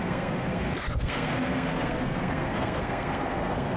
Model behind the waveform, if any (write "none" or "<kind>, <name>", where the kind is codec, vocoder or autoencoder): codec, SNAC